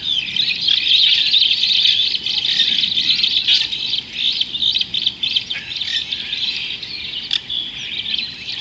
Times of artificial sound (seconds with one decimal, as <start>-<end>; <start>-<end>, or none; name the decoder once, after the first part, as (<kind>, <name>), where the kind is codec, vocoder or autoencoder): none